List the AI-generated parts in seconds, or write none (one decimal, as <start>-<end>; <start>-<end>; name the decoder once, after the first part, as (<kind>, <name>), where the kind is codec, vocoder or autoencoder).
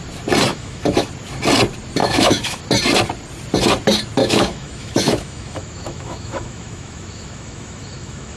0.5-1.1 (autoencoder, DAC-VAE); 2.0-2.6; 4.2-8.4